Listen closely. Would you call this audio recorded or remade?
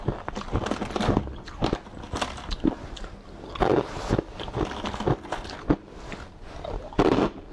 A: recorded